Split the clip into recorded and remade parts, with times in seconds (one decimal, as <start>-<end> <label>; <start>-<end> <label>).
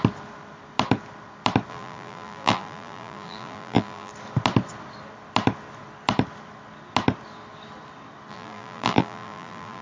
0.0-1.7 recorded; 1.7-4.1 remade; 4.1-8.3 recorded; 8.3-9.8 remade